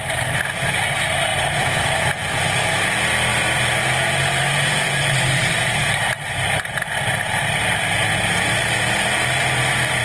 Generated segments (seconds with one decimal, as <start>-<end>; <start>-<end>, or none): 1.3-2.1; 3.3-6.7; 8.1-10.0